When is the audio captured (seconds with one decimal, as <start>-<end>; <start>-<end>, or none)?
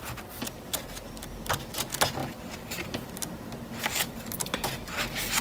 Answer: 0.0-5.4